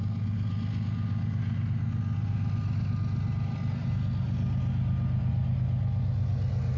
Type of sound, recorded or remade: recorded